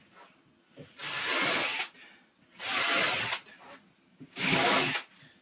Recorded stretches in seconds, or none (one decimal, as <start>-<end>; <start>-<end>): 0.0-4.1; 4.7-5.4